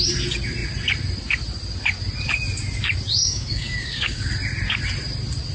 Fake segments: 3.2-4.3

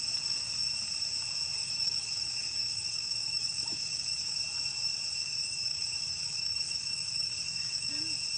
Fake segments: 1.6-4.4; 5.2-7.9

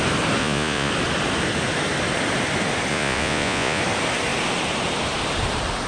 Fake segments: 0.4-0.9; 2.9-3.8

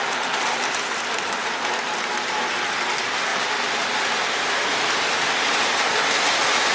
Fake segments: none

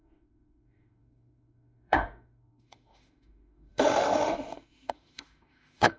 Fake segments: 0.0-6.0